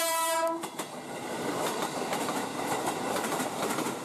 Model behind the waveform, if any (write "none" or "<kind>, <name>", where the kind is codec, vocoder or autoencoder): vocoder, BigVGAN v2